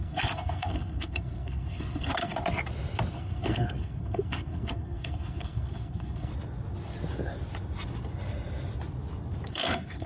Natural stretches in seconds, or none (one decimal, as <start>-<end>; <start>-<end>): 2.3-3.1; 6.3-9.5